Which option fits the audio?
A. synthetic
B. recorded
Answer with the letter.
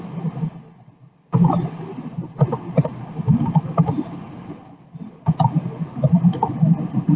B